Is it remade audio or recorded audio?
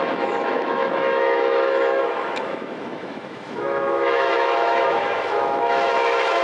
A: remade